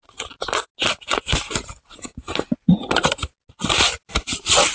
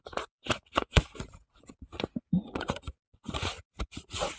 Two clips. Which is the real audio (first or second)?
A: first